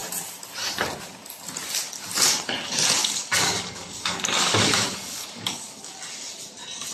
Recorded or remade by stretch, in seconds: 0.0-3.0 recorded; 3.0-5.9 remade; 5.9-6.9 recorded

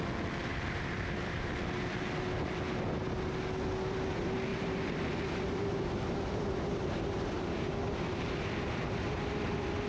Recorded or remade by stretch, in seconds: 0.0-0.5 recorded; 0.5-1.5 remade; 1.5-4.5 recorded; 4.5-9.4 remade; 9.4-9.9 recorded

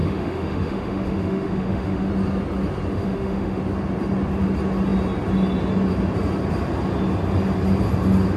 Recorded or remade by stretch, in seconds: 0.0-2.1 remade; 2.1-2.9 recorded; 2.9-3.6 remade; 3.6-8.4 recorded

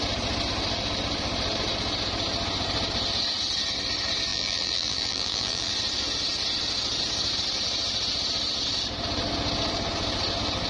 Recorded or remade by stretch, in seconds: 0.0-4.3 recorded; 4.3-5.7 remade; 5.7-10.7 recorded

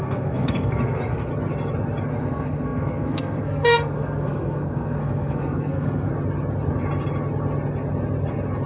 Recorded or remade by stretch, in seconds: 0.0-1.3 remade; 1.3-2.1 recorded; 2.1-6.1 remade; 6.1-8.7 recorded

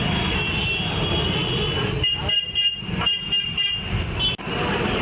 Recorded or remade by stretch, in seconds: 0.0-5.0 recorded

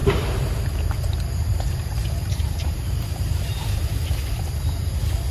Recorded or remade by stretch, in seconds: 0.0-0.6 remade; 0.6-1.5 recorded; 1.5-4.1 remade; 4.1-5.3 recorded